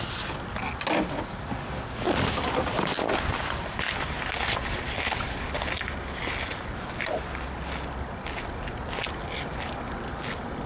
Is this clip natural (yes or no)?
yes